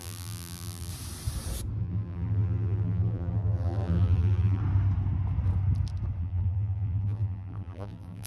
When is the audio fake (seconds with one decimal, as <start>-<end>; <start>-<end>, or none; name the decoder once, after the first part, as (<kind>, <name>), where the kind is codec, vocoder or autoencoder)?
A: 0.0-0.9 (vocoder, BigVGAN v2); 1.8-4.6; 6.2-8.3